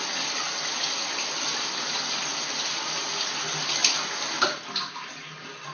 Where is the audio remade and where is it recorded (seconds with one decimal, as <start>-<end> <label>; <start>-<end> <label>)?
0.0-5.7 recorded

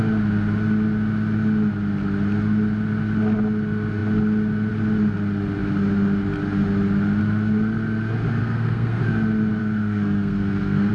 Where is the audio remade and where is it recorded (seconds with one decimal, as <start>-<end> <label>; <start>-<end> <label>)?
0.0-8.4 recorded; 8.4-9.0 remade; 9.0-9.6 recorded; 9.6-10.9 remade

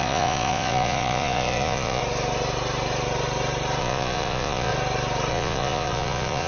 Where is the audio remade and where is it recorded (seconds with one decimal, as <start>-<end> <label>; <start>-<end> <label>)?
0.0-2.0 remade; 2.0-3.8 recorded; 3.8-4.7 remade; 4.7-5.3 recorded; 5.3-6.5 remade

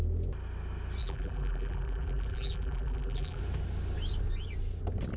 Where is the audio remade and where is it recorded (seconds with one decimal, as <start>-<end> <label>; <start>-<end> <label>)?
0.0-1.0 recorded; 1.0-3.4 remade; 3.4-5.2 recorded

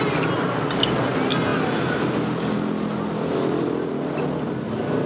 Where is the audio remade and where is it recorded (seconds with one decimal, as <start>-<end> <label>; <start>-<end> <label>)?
0.0-5.1 recorded

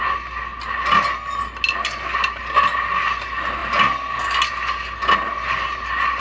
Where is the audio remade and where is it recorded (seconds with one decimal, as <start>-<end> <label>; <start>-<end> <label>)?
0.0-6.2 recorded